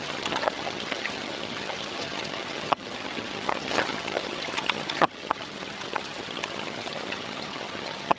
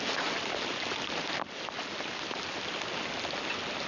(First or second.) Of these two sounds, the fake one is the first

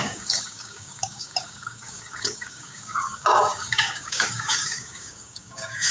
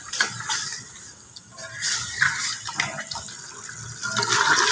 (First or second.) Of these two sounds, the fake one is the first